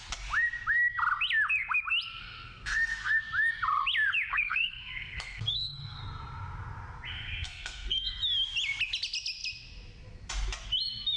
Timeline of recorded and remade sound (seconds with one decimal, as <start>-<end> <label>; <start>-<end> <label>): 0.0-2.2 recorded; 2.2-3.2 remade; 3.2-4.3 recorded; 4.3-6.0 remade; 6.0-7.1 recorded; 7.1-8.2 remade; 8.2-11.2 recorded